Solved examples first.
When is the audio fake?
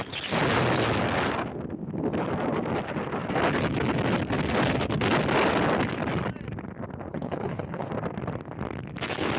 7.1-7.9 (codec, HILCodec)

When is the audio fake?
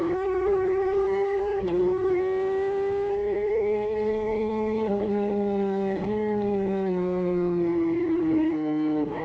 0.0-2.2 (codec, SNAC); 3.1-9.2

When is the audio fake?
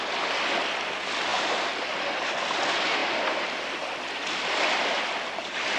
3.0-4.6 (vocoder, BigVGAN v2)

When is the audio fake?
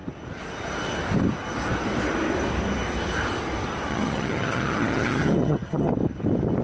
3.9-5.9 (vocoder, HiFi-GAN)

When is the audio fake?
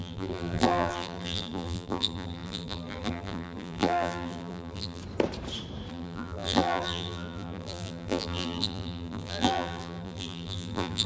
0.0-5.0 (vocoder, BigVGAN v2); 5.9-11.1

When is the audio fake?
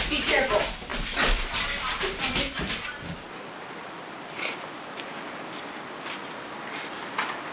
none